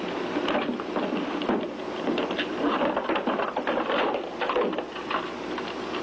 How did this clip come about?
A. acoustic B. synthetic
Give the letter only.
A